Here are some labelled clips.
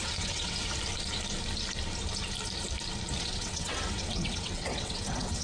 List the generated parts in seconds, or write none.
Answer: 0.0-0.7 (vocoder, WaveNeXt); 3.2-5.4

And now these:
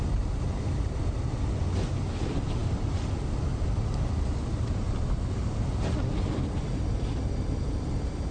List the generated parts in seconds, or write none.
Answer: none

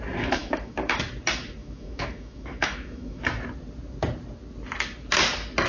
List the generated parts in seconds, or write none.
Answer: 0.4-1.0 (autoencoder, DAC-VAE); 1.6-3.2

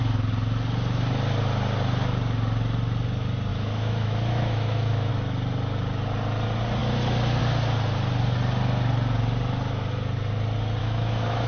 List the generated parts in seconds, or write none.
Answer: 3.5-5.1 (autoencoder, DAC-VAE); 10.8-11.5

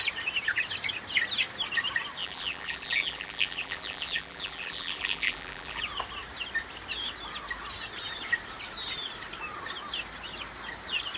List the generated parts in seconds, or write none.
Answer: 2.2-5.8 (vocoder, BigVGAN v2)

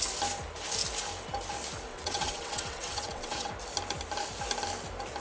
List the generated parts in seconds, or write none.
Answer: 1.9-3.5 (vocoder, WaveNeXt)

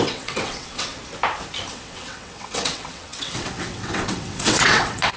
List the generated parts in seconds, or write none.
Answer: 0.0-0.9 (vocoder, WaveNeXt); 1.7-5.2